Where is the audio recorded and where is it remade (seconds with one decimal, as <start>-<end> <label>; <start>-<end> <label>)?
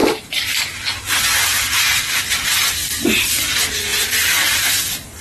0.0-1.9 recorded; 1.9-2.8 remade; 2.8-3.9 recorded; 3.9-5.2 remade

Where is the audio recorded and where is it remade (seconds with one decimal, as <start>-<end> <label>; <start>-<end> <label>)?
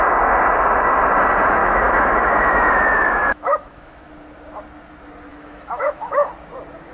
0.0-1.6 recorded; 1.6-4.1 remade; 4.1-5.3 recorded; 5.3-6.3 remade; 6.3-6.9 recorded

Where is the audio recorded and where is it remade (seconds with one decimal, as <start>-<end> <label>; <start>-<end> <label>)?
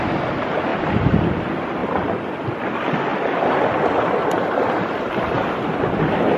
0.0-0.7 recorded; 0.7-1.4 remade; 1.4-6.4 recorded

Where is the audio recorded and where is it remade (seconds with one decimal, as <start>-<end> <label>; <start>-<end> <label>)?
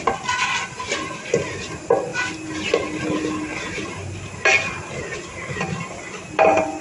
0.0-6.8 recorded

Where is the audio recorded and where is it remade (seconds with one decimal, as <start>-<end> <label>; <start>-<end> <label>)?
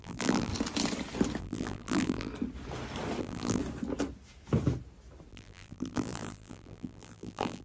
0.0-0.5 remade; 0.5-1.4 recorded; 1.4-2.3 remade; 2.3-3.2 recorded; 3.2-3.6 remade; 3.6-5.3 recorded; 5.3-7.6 remade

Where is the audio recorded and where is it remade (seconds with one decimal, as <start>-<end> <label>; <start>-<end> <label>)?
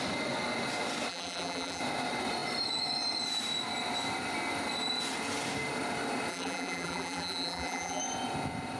0.0-1.1 recorded; 1.1-1.8 remade; 1.8-6.3 recorded; 6.3-8.0 remade; 8.0-8.8 recorded